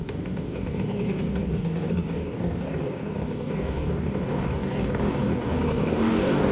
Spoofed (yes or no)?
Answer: yes